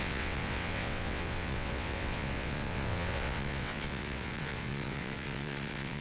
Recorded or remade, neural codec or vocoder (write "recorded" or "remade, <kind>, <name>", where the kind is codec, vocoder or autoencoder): remade, vocoder, WaveNeXt